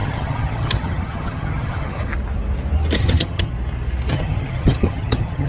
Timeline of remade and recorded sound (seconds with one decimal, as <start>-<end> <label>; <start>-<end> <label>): 0.0-2.1 remade; 2.1-3.0 recorded; 3.0-3.5 remade; 3.5-4.1 recorded; 4.1-5.5 remade